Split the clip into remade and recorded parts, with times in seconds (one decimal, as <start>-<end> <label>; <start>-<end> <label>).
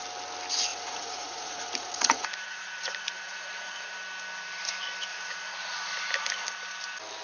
0.0-0.7 recorded; 0.7-3.9 remade; 3.9-5.1 recorded; 5.1-5.8 remade; 5.8-7.2 recorded